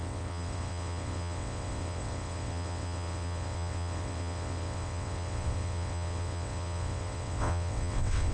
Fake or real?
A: fake